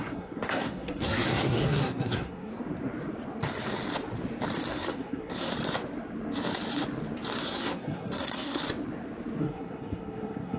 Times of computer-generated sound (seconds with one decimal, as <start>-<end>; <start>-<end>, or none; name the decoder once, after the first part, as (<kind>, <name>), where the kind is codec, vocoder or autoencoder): 0.0-2.5 (codec, SNAC); 4.7-5.5; 7.4-8.6; 9.4-10.6